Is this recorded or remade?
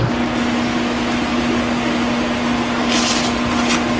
recorded